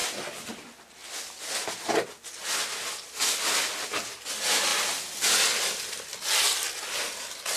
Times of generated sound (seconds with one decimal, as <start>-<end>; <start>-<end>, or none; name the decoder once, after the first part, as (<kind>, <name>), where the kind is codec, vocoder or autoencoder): none